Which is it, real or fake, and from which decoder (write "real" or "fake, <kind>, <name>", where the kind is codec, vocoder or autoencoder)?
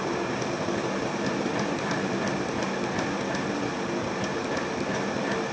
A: real